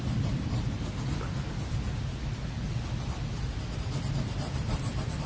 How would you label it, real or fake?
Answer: real